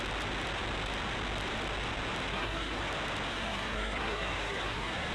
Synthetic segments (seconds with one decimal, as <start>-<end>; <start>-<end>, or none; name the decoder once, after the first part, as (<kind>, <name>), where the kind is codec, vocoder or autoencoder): 2.3-2.8 (codec, SNAC); 3.3-5.1